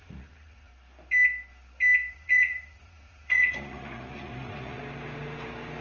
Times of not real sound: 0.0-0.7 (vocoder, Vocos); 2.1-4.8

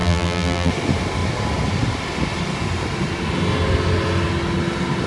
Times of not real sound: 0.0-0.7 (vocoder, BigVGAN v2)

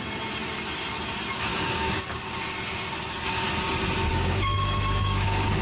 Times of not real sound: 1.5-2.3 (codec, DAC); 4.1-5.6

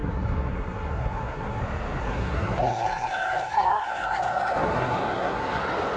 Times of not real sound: 0.0-1.6 (codec, SNAC); 2.0-5.6

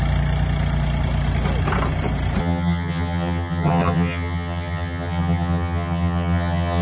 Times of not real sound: 2.4-6.8 (vocoder, HiFi-GAN)

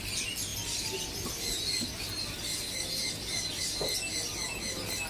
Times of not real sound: none

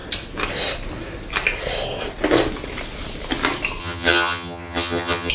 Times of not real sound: 3.8-5.3 (vocoder, HiFi-GAN)

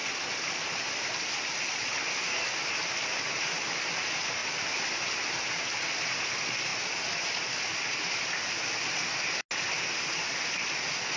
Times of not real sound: 0.0-1.8 (vocoder, BigVGAN v2); 4.4-5.8